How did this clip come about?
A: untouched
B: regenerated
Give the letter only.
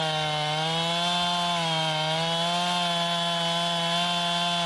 A